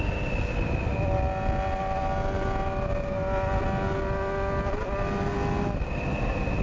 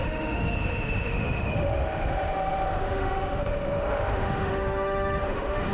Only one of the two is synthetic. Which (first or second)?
second